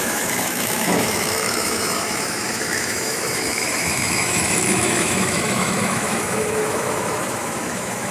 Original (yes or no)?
no